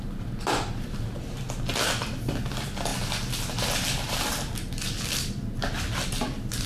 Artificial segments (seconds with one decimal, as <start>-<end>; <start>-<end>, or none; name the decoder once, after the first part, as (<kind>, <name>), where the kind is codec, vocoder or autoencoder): none